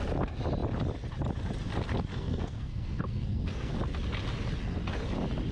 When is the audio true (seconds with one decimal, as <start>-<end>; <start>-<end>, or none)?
0.0-2.1; 3.7-5.5